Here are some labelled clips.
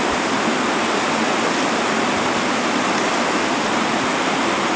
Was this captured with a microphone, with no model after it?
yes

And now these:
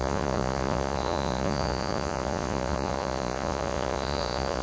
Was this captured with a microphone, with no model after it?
no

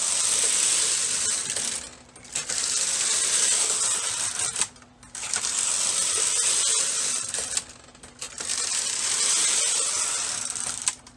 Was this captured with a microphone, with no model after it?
yes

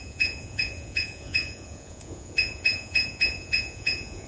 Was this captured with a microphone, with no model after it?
no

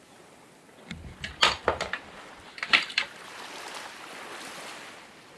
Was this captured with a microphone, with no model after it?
yes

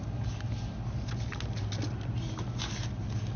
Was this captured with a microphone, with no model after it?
yes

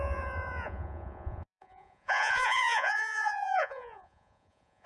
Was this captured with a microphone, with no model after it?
no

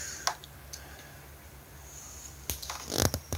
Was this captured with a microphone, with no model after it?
yes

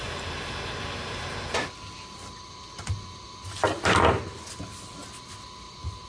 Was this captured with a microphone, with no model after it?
yes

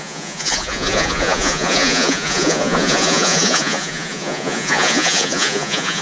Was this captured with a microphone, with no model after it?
no